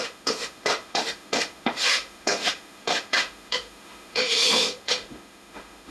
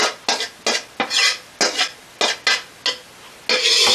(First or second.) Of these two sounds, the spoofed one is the first